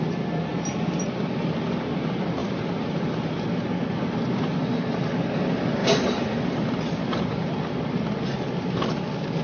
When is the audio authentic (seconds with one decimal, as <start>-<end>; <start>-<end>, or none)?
0.0-0.5; 1.1-2.4; 3.7-5.8; 7.2-9.4